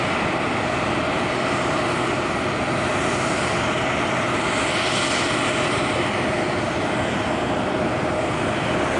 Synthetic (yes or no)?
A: no